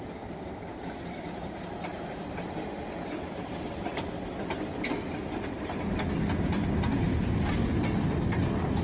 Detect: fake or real real